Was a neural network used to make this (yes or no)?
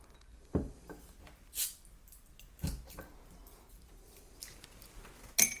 no